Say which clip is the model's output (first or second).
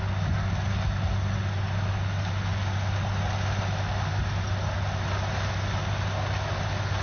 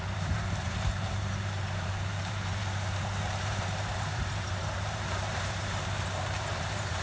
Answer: second